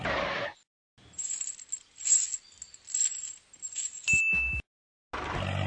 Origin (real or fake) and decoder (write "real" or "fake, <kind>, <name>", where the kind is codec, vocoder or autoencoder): real